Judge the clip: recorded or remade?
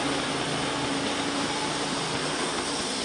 recorded